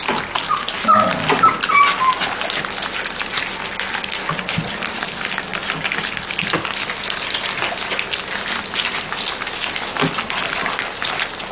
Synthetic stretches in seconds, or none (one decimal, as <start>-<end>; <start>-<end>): none